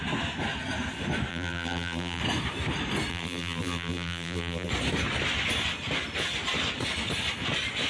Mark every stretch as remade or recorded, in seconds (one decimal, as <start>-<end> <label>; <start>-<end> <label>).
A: 0.0-1.3 recorded; 1.3-2.2 remade; 2.2-3.1 recorded; 3.1-4.7 remade; 4.7-7.9 recorded